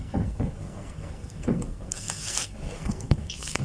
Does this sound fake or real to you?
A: fake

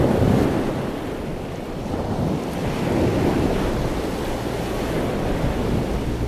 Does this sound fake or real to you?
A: real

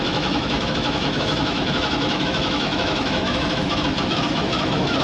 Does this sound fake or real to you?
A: fake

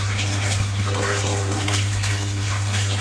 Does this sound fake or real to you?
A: fake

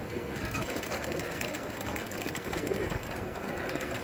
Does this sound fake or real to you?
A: fake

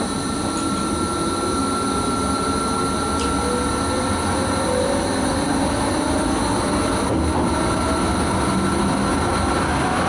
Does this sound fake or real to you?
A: real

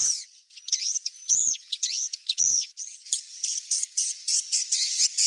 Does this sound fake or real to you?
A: fake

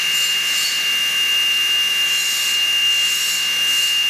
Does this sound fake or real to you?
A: fake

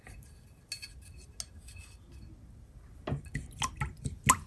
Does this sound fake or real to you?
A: real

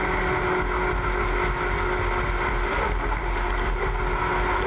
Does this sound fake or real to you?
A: real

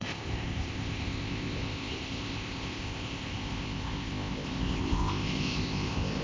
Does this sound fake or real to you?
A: fake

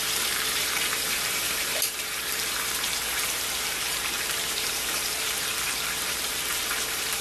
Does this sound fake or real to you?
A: fake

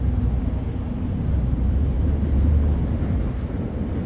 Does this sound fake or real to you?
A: fake